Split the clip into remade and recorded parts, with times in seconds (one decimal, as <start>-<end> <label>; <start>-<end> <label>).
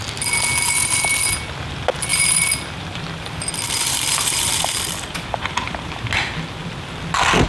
0.0-2.1 recorded; 2.1-6.1 remade; 6.1-7.5 recorded